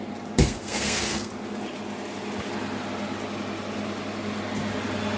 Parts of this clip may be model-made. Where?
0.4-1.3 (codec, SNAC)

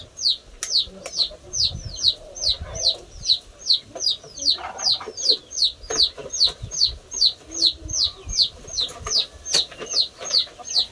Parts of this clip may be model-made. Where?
none

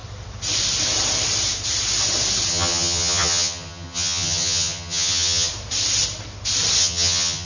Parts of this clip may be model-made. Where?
2.5-5.5 (vocoder, HiFi-GAN); 6.8-7.4

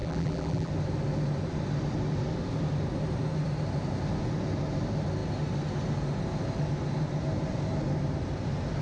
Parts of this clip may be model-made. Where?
0.0-0.7 (vocoder, BigVGAN v2)

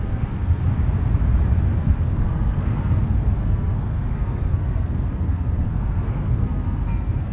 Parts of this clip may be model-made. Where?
0.0-0.6 (codec, SNAC); 1.8-7.3

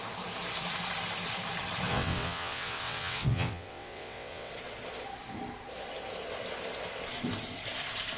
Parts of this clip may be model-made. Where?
1.9-4.5 (vocoder, WaveNeXt)

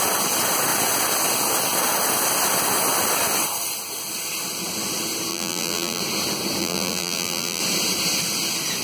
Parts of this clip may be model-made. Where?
5.3-6.0 (vocoder, BigVGAN v2); 6.6-7.6